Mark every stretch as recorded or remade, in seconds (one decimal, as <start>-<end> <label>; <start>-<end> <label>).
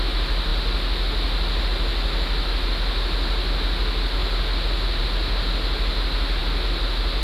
0.0-7.2 recorded